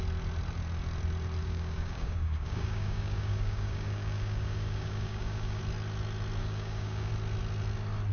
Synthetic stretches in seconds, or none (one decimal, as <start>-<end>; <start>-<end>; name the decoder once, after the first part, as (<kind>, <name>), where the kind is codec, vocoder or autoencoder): 1.4-5.6 (codec, DAC); 6.4-7.1